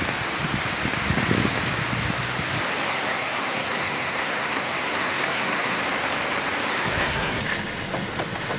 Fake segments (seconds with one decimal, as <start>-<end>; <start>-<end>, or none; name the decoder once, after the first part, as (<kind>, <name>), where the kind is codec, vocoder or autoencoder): 2.9-5.8 (codec, SNAC); 6.7-7.4